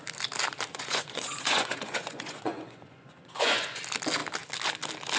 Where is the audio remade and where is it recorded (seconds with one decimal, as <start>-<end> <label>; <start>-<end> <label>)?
0.0-0.7 recorded; 0.7-3.8 remade; 3.8-5.2 recorded